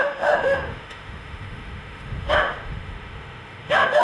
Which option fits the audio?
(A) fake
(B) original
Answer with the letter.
A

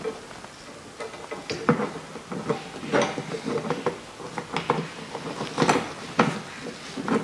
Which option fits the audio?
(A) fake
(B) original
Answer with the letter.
B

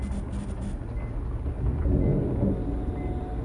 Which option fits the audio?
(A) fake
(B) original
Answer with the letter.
B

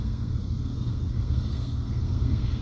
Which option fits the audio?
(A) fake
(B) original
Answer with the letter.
A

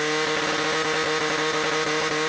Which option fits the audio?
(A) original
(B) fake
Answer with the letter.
A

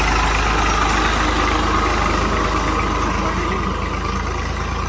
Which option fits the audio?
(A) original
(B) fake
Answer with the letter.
A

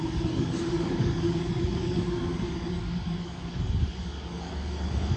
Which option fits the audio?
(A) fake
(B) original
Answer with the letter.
A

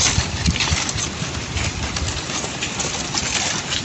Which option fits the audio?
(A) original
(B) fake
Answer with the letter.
A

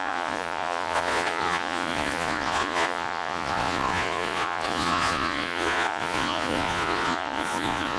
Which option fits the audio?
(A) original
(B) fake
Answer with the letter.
B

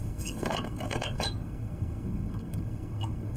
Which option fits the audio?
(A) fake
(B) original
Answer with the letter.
A